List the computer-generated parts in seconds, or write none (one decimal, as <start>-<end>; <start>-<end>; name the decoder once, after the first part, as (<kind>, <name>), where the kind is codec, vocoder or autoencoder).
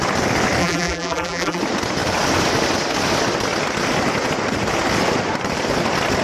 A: 0.6-1.6 (vocoder, BigVGAN v2)